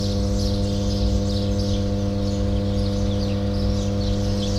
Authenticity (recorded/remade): recorded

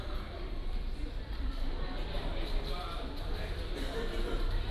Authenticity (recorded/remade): remade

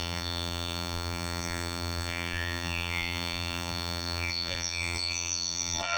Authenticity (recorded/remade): remade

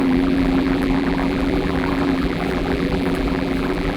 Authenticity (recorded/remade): remade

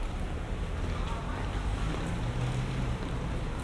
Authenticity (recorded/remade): recorded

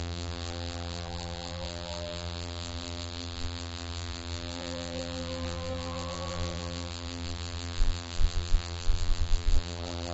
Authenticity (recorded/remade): remade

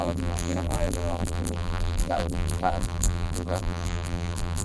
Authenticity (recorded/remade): remade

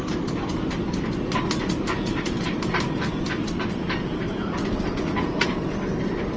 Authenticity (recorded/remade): recorded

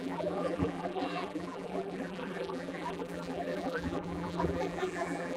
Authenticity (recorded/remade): remade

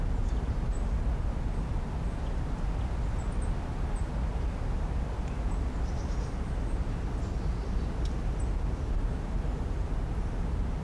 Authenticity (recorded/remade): recorded